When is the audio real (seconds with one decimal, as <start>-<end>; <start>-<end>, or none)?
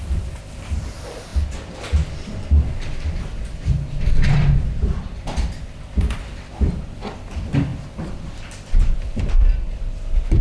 1.3-2.7